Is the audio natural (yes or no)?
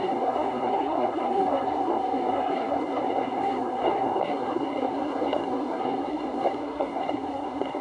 no